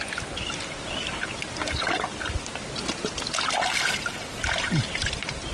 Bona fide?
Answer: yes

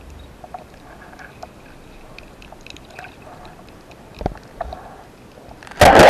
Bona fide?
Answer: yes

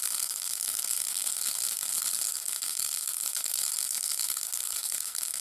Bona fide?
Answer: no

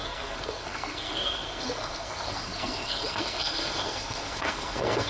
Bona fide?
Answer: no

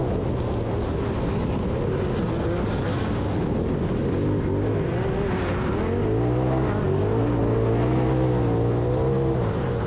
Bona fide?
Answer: yes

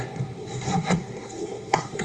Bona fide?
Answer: no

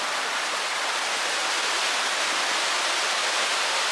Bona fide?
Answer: yes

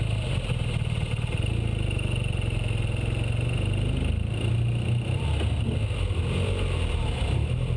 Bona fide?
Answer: yes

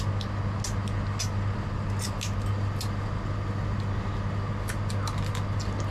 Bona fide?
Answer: yes